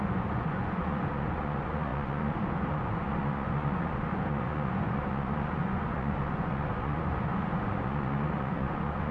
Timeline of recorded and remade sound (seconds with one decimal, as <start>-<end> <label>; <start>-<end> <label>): 0.0-9.1 remade